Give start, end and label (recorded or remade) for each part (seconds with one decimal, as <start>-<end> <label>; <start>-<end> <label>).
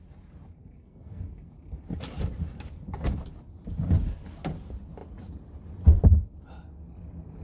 0.0-0.6 recorded; 0.6-1.5 remade; 1.5-7.4 recorded